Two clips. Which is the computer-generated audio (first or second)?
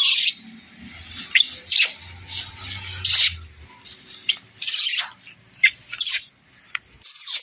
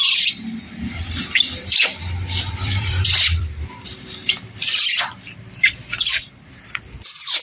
second